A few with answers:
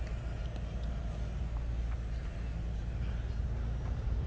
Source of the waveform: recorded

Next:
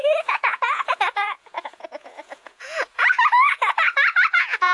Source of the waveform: remade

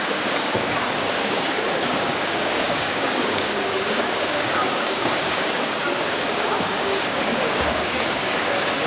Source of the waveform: remade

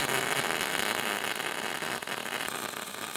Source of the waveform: recorded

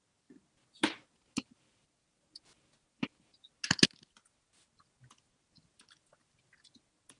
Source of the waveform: recorded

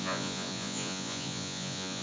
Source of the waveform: remade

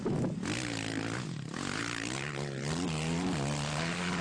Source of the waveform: recorded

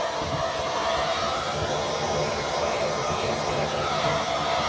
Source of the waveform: recorded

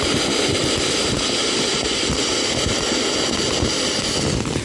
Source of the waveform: recorded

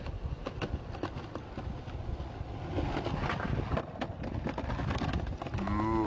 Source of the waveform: recorded